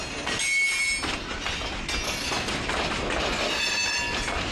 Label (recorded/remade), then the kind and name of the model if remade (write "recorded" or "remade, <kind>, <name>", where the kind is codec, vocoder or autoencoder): recorded